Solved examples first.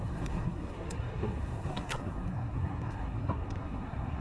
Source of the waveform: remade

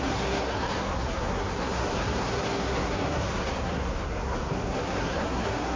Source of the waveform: remade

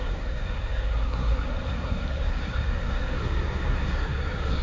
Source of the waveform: remade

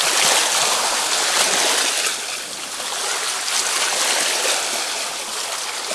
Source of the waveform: recorded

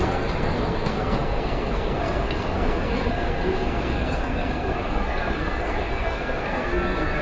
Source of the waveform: remade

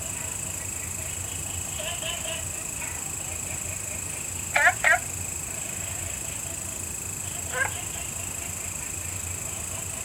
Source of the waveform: recorded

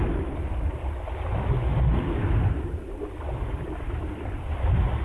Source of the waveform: recorded